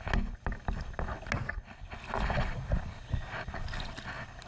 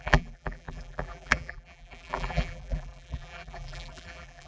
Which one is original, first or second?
first